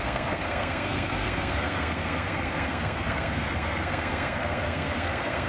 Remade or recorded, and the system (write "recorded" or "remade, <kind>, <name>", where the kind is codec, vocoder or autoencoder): remade, codec, SNAC